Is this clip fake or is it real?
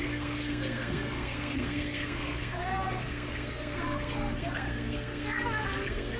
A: fake